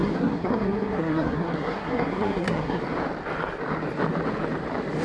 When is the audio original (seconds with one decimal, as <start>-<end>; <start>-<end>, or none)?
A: 2.8-5.0